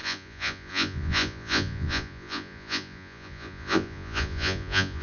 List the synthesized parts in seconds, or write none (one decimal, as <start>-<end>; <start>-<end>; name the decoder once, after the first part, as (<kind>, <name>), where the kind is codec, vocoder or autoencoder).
0.0-5.0 (vocoder, Vocos)